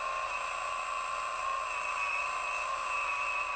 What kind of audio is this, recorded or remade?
recorded